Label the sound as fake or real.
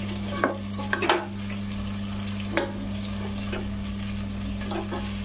real